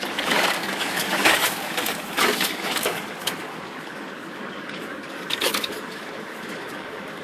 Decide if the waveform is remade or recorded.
remade